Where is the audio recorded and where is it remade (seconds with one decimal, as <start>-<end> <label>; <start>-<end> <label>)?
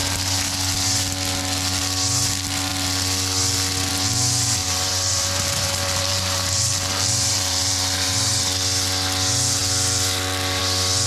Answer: 0.0-4.6 recorded; 4.6-8.4 remade; 8.4-11.1 recorded